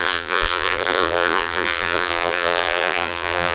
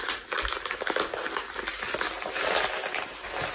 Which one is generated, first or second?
first